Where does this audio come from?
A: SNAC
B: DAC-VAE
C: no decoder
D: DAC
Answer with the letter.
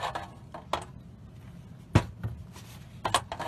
C